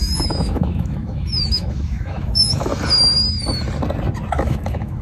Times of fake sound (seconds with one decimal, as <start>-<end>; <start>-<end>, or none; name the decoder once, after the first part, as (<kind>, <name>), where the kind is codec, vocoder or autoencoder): 0.0-2.7 (autoencoder, DAC-VAE); 4.3-5.0